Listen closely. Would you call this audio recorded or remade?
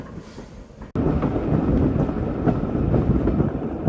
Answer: recorded